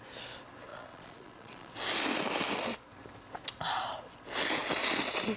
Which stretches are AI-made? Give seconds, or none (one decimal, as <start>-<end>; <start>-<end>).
0.7-1.7